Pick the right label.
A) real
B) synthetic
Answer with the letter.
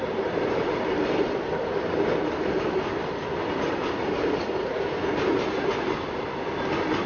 A